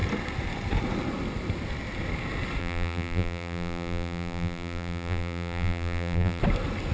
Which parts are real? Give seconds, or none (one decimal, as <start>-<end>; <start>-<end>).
0.0-2.6; 6.4-6.9